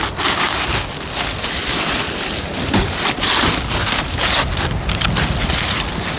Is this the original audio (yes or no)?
yes